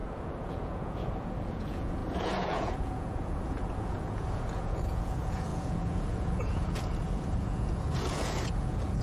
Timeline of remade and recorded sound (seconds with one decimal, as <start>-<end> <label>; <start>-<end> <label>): 0.0-9.0 remade

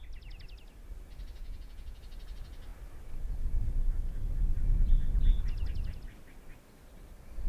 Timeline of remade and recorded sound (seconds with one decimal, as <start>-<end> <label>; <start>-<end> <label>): 0.0-1.4 recorded; 1.4-2.0 remade; 2.0-7.5 recorded